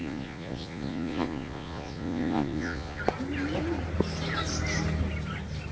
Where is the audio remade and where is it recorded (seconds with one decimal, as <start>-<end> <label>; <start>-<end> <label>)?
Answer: 0.0-3.0 remade; 3.0-5.7 recorded